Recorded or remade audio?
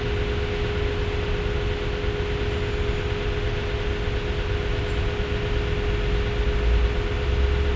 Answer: recorded